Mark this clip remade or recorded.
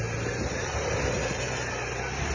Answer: recorded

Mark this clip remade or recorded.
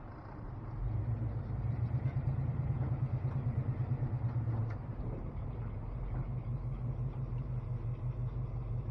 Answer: remade